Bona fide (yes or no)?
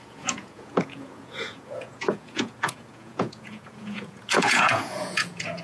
no